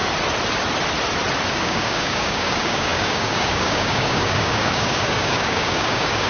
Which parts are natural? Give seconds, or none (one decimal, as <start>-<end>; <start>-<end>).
0.0-1.5